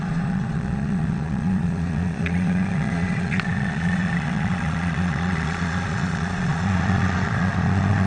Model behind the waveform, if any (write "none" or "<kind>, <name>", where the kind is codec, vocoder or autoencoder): vocoder, Vocos